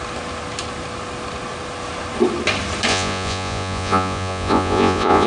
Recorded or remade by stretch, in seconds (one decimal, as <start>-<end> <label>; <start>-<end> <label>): 0.0-2.9 recorded; 2.9-5.3 remade